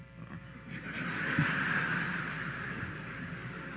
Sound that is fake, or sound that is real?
real